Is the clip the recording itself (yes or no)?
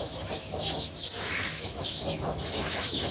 no